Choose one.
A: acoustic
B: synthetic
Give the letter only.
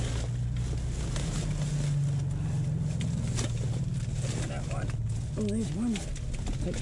A